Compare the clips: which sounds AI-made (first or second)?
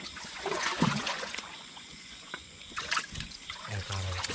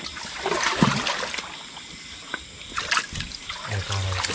first